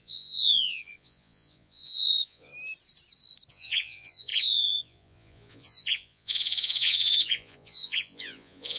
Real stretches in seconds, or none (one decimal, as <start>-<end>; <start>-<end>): 2.5-3.5